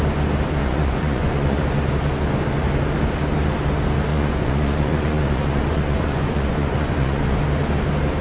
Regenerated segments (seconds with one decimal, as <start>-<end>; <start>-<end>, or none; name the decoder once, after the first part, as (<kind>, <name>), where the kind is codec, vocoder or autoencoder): 0.6-1.6 (vocoder, Vocos); 4.1-7.4